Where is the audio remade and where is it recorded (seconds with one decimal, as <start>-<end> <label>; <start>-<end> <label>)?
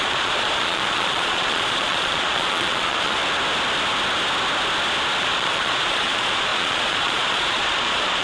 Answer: 0.0-3.2 remade; 3.2-5.2 recorded; 5.2-8.2 remade